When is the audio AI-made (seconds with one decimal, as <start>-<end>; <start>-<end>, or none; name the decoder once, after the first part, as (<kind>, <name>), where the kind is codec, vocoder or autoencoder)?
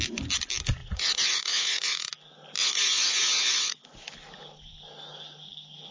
0.8-2.0 (vocoder, Vocos); 2.6-3.9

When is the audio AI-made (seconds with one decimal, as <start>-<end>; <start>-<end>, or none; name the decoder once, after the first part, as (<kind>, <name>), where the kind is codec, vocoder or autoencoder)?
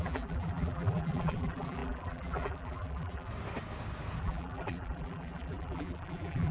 0.0-3.3 (vocoder, BigVGAN v2); 4.2-6.5